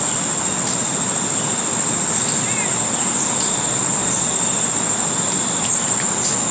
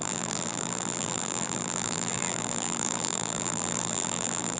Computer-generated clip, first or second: second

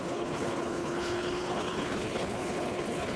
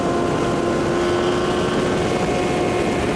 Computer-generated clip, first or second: first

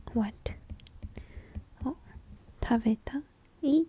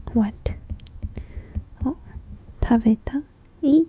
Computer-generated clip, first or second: second